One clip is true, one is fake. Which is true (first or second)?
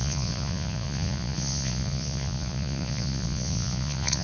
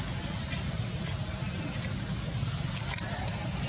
second